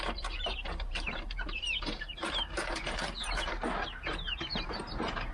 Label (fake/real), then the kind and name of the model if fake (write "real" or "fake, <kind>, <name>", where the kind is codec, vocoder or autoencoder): fake, vocoder, BigVGAN v2